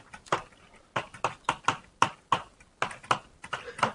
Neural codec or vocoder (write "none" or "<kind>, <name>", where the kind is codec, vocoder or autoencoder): none